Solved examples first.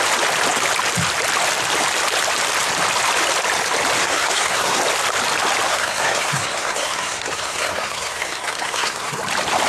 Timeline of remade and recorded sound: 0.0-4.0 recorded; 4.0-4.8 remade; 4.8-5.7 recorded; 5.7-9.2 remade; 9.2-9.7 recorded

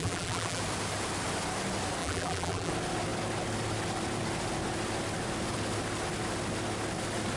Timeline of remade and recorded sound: 0.0-0.6 remade; 0.6-2.0 recorded; 2.0-2.7 remade; 2.7-7.4 recorded

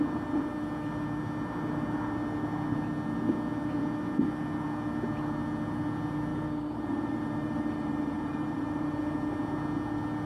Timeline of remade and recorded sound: 0.0-6.3 recorded; 6.3-9.0 remade; 9.0-10.3 recorded

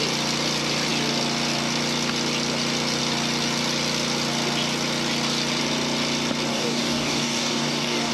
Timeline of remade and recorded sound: 0.0-6.5 recorded; 6.5-8.1 remade

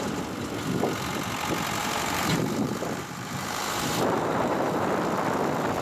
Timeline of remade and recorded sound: 0.0-1.8 recorded; 1.8-4.9 remade; 4.9-5.8 recorded

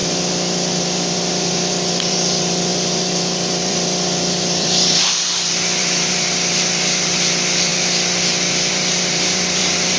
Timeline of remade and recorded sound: 0.0-7.7 remade; 7.7-8.7 recorded; 8.7-10.0 remade